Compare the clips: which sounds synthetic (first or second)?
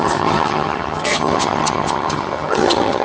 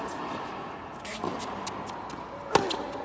first